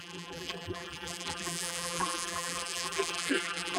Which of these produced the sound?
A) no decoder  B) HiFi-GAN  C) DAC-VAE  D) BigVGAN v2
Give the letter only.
D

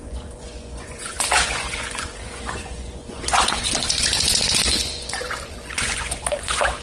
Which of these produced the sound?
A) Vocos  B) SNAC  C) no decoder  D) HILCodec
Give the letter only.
A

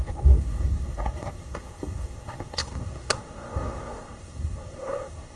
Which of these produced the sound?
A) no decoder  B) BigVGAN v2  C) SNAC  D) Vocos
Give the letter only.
C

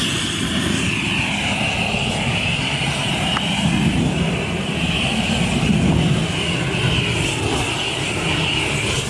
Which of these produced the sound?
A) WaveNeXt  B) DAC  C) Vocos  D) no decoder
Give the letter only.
D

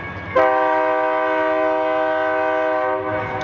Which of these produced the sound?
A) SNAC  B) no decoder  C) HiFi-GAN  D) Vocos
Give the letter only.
B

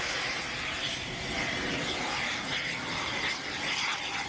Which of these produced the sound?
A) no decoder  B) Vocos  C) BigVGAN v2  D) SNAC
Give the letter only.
A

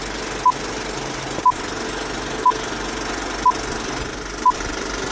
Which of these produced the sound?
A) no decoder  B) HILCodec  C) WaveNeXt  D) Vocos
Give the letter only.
A